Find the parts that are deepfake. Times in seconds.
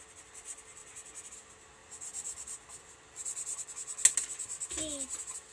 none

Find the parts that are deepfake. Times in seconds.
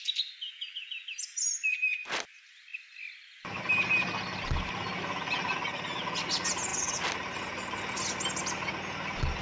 none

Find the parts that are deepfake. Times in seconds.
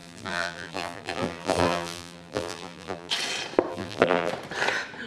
0.0-3.1 (vocoder, BigVGAN v2); 3.7-4.3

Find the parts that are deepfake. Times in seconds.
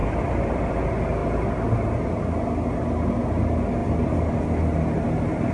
0.0-0.7 (vocoder, BigVGAN v2); 3.8-4.4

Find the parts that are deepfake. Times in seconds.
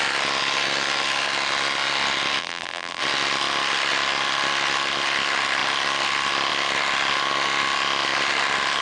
2.4-3.0 (vocoder, BigVGAN v2)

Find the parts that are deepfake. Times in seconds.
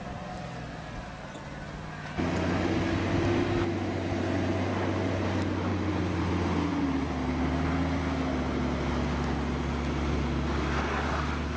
5.7-6.3 (vocoder, BigVGAN v2); 6.7-7.4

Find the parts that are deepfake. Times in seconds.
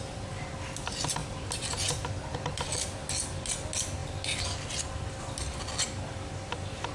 none